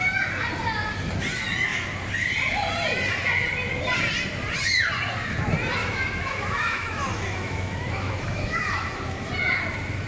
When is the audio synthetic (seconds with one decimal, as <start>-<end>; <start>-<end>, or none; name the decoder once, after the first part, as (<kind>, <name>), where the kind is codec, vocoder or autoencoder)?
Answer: 5.8-9.3 (autoencoder, DAC-VAE)